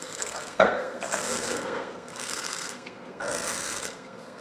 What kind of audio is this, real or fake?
fake